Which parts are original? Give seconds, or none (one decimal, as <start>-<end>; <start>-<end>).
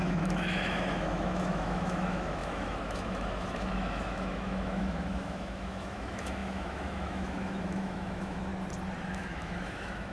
8.5-9.1